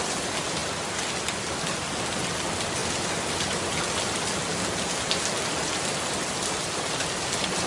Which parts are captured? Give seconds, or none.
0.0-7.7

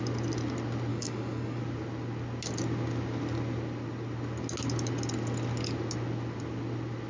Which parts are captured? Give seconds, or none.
0.0-0.9; 1.6-7.1

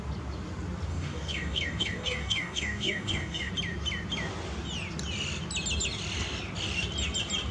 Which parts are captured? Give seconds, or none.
0.0-0.9; 3.5-7.5

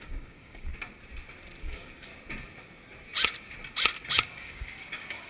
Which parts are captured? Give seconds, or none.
0.7-1.6; 2.1-4.2